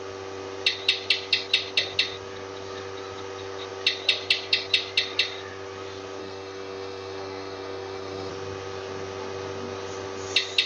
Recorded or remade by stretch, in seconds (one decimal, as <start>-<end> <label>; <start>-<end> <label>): 0.0-6.2 recorded; 6.2-8.3 remade; 8.3-10.7 recorded